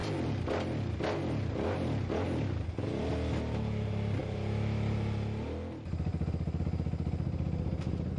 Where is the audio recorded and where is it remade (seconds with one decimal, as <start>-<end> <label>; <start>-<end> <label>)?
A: 0.0-8.2 recorded